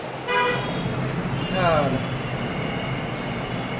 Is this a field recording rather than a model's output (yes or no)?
yes